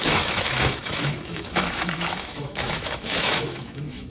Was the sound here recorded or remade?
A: remade